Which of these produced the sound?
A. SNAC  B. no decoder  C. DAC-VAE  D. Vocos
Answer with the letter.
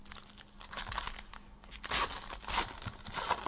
B